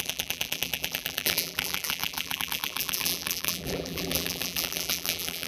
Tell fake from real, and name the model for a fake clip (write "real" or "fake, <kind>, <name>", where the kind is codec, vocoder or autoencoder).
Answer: fake, vocoder, BigVGAN v2